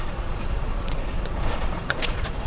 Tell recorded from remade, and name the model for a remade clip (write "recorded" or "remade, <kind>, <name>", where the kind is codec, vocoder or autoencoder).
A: remade, vocoder, Vocos